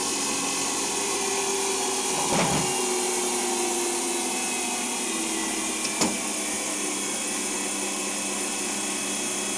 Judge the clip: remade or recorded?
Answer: recorded